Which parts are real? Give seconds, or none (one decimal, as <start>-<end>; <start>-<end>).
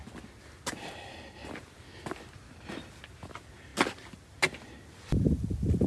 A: 0.0-5.9